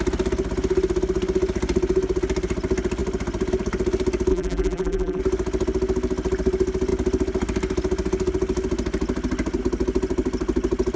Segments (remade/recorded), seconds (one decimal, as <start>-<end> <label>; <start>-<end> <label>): 0.0-4.3 recorded; 4.3-5.2 remade; 5.2-11.0 recorded